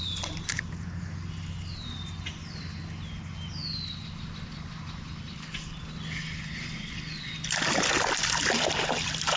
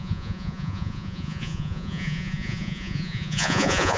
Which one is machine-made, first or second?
second